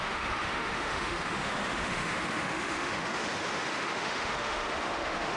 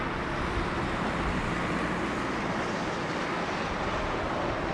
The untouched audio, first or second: second